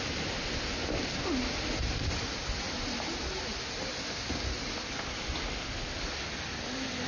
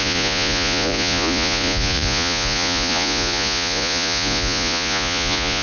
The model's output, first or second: second